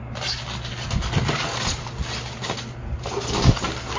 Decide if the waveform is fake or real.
real